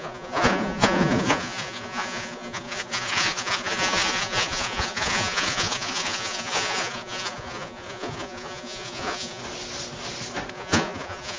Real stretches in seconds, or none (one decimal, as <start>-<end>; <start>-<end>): 9.4-10.5